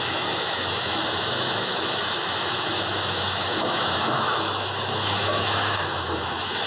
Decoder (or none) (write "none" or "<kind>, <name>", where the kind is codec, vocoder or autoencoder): autoencoder, DAC-VAE